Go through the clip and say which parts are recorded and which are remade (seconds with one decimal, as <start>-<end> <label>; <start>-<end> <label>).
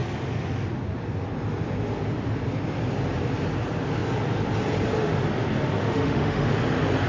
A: 0.0-5.8 recorded; 5.8-6.5 remade; 6.5-7.1 recorded